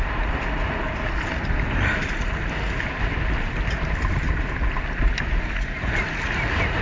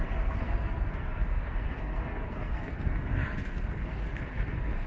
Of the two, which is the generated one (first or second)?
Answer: second